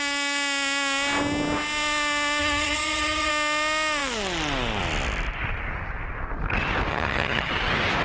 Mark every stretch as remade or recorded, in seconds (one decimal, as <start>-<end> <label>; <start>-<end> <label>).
0.0-2.4 recorded; 2.4-3.3 remade; 3.3-6.9 recorded; 6.9-7.5 remade; 7.5-8.0 recorded